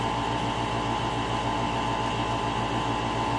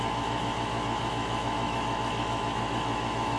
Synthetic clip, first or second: second